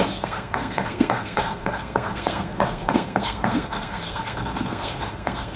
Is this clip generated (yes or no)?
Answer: yes